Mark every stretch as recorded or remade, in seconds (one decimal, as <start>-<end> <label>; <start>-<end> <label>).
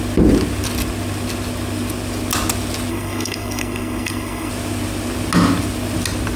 0.0-2.9 recorded; 2.9-4.5 remade; 4.5-6.4 recorded